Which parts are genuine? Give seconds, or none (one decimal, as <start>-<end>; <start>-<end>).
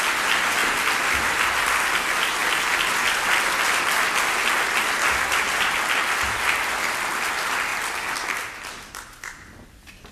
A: 0.0-10.1